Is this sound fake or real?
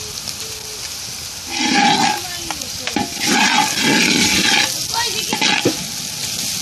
real